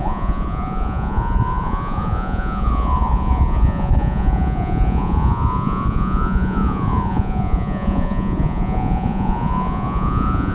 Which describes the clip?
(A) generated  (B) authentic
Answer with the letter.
A